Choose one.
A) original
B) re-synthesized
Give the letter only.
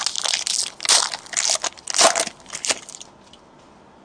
A